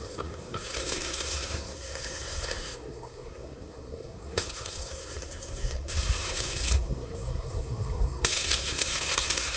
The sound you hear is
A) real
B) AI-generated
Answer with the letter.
B